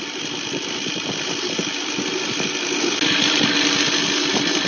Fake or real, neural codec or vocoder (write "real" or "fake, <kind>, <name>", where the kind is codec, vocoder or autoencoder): real